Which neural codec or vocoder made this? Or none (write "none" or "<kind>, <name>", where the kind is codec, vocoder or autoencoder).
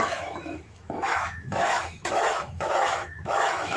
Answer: autoencoder, DAC-VAE